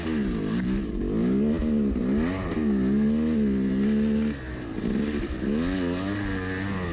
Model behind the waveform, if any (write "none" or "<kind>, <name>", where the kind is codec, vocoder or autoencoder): none